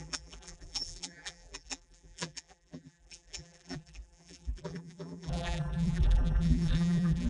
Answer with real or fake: fake